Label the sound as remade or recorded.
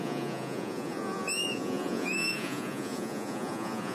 remade